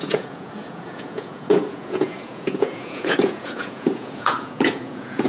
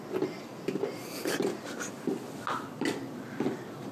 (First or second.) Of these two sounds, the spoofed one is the first